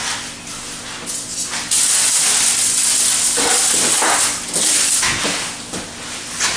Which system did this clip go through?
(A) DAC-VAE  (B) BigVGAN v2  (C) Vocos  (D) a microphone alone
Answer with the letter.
D